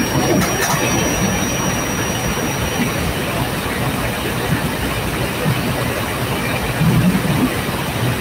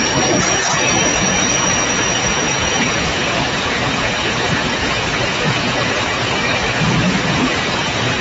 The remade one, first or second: second